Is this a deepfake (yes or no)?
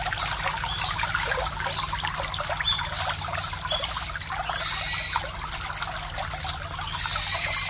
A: no